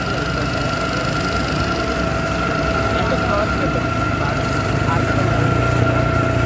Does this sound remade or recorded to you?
recorded